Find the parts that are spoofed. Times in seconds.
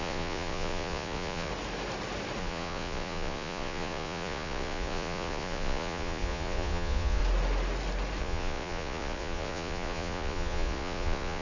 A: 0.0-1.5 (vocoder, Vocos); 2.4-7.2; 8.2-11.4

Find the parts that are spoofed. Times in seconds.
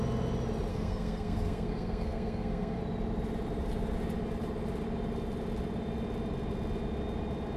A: 0.7-2.8 (codec, SNAC)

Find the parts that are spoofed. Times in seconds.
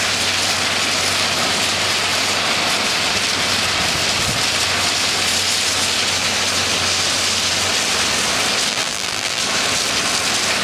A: 8.7-9.4 (vocoder, BigVGAN v2)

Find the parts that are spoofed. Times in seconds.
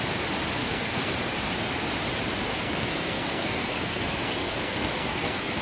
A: 0.6-1.1 (codec, SNAC); 2.5-5.6